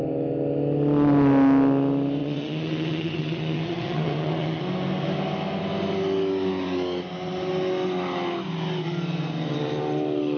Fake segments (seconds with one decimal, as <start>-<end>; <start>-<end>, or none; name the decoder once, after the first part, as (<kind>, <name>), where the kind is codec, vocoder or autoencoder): 2.2-4.6 (vocoder, WaveNeXt)